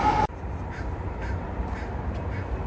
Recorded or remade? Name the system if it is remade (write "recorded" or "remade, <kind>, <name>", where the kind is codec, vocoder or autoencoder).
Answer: recorded